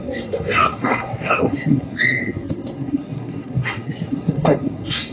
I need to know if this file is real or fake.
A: fake